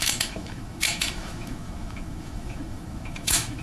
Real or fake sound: fake